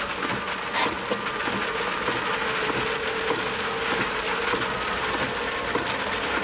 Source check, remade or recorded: recorded